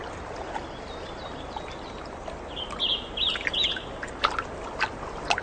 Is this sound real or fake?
real